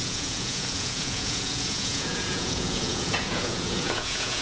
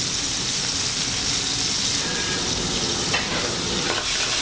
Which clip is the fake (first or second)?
first